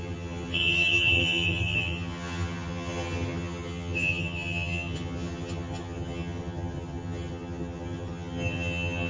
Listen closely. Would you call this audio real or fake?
fake